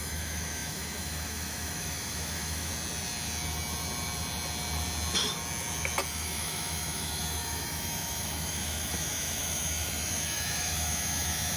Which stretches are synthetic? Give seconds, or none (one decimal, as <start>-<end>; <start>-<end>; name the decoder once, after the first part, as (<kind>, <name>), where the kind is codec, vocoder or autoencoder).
0.0-2.7 (autoencoder, DAC-VAE); 6.1-11.6